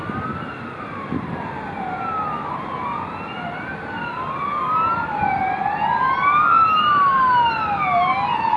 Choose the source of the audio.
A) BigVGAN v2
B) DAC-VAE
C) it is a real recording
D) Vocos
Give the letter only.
C